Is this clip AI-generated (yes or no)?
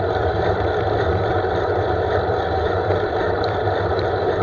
yes